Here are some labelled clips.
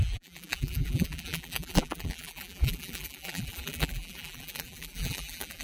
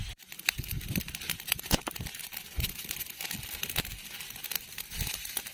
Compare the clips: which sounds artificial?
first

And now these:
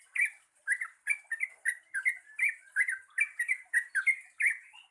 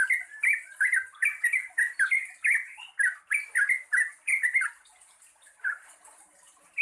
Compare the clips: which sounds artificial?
second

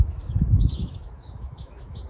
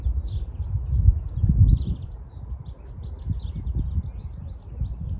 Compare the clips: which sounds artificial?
first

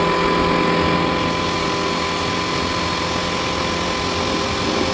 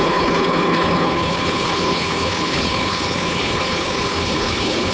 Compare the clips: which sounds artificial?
second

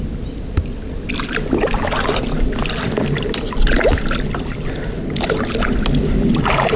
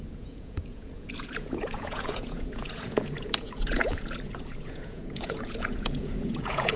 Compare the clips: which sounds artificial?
second